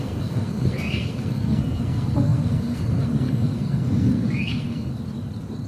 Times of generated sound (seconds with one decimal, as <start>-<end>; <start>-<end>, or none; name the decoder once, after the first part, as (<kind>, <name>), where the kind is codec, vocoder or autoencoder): 0.0-4.9 (codec, SNAC)